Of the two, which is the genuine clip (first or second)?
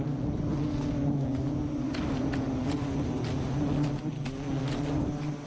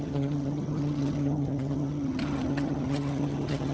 first